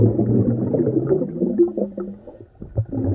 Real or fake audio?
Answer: real